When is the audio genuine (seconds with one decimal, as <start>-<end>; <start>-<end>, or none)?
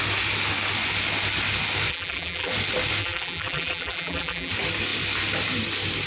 0.0-1.9; 2.5-3.0; 4.5-6.1